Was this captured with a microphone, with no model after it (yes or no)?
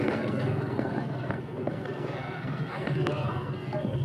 no